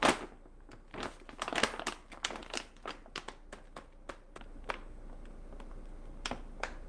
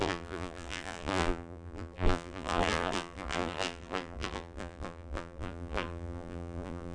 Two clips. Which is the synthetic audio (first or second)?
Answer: second